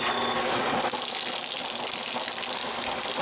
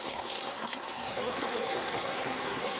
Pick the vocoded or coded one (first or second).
second